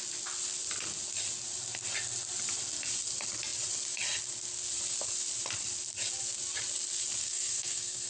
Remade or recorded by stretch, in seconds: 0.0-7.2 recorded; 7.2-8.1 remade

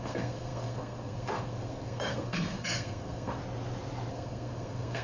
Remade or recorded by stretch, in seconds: 0.0-3.4 remade; 3.4-4.1 recorded; 4.1-5.0 remade

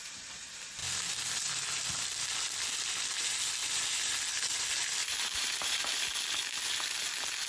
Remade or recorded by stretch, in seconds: 0.0-5.0 recorded; 5.0-6.0 remade; 6.0-7.5 recorded

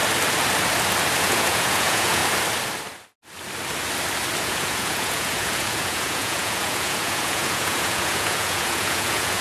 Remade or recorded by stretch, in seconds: 0.0-1.2 recorded; 1.2-2.2 remade; 2.2-4.4 recorded; 4.4-9.4 remade

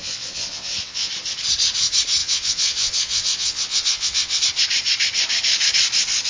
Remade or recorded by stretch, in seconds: 0.0-1.1 remade; 1.1-2.2 recorded; 2.2-4.4 remade; 4.4-6.3 recorded